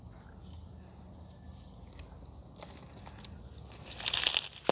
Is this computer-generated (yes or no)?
no